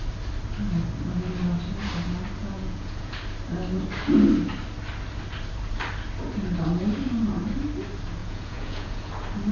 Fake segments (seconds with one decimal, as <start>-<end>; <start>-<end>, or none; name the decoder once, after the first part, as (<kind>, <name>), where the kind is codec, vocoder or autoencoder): 2.4-3.2 (vocoder, Vocos); 8.2-9.1